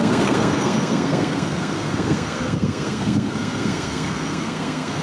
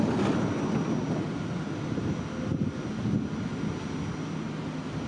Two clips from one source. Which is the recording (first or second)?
second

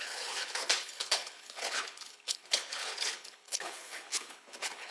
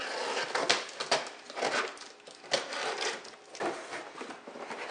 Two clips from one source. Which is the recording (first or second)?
second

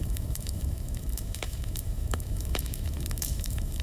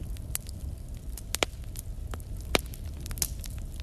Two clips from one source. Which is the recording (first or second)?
second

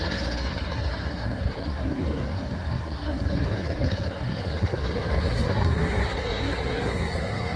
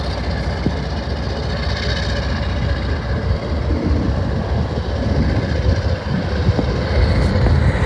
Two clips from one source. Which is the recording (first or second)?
second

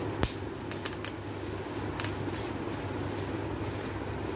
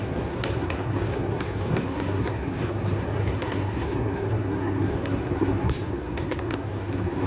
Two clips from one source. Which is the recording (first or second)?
first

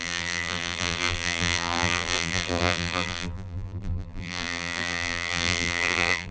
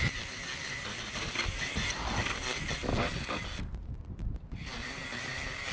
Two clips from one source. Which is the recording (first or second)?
second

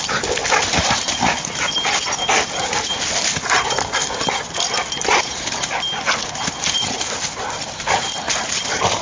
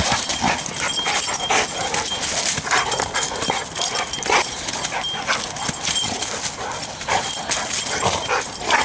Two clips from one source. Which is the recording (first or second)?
second